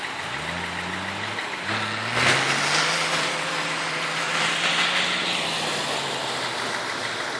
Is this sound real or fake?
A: real